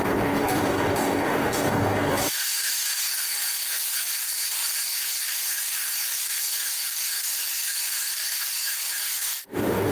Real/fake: fake